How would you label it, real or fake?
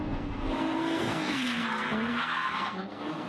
fake